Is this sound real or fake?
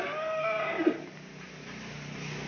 real